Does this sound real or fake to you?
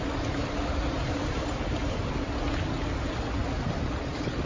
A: real